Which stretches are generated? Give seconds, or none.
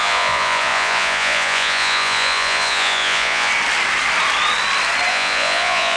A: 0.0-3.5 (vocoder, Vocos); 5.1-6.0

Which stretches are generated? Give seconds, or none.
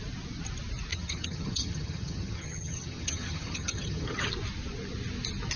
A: 0.9-4.3 (vocoder, HiFi-GAN)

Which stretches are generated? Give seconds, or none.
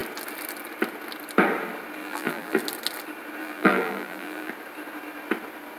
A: 2.0-2.6 (vocoder, BigVGAN v2); 3.4-4.5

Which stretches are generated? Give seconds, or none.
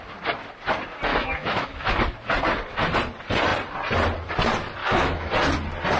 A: 1.1-1.9 (autoencoder, DAC-VAE); 4.8-5.3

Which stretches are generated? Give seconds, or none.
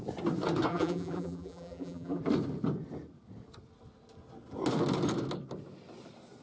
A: 0.7-2.2 (vocoder, BigVGAN v2)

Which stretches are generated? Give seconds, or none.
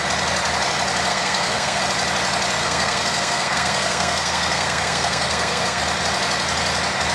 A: 1.1-1.8 (codec, SNAC); 2.6-5.8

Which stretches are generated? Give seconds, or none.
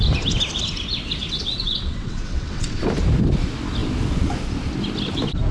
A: 1.2-2.8 (vocoder, WaveNeXt)